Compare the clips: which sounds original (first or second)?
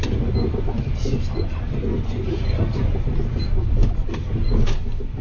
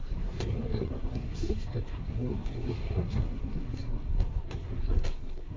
first